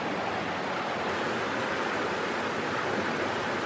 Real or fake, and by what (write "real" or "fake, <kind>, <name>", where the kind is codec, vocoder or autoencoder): real